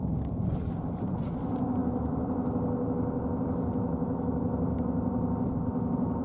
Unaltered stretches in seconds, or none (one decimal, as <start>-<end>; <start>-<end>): 0.0-6.2